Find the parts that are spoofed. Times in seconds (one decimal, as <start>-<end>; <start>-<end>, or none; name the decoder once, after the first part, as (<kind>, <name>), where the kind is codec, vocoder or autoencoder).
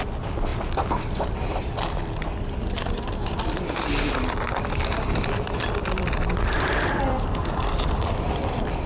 5.8-8.9 (vocoder, BigVGAN v2)